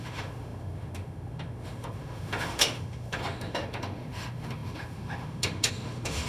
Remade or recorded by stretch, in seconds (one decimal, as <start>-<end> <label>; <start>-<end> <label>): 0.0-6.3 remade